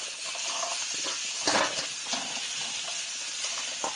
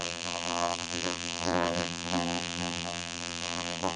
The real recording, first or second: first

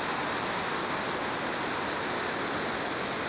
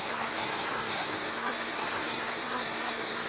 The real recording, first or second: first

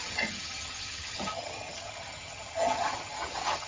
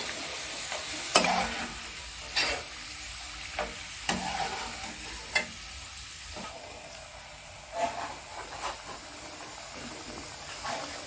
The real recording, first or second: second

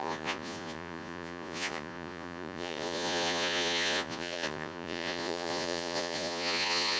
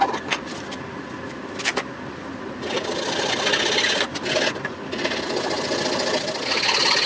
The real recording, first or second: second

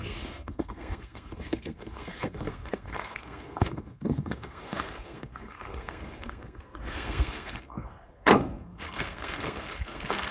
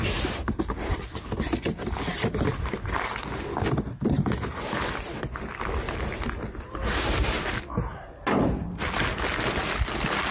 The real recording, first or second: second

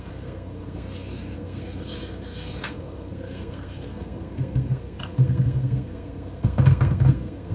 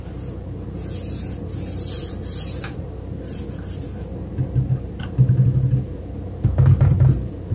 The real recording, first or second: second